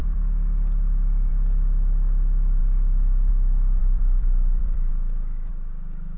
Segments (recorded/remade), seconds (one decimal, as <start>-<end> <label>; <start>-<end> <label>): 0.0-1.3 remade; 1.3-3.8 recorded; 3.8-4.9 remade; 4.9-5.5 recorded; 5.5-6.2 remade